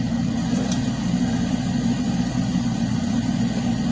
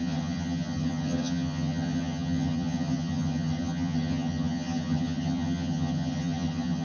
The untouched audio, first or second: first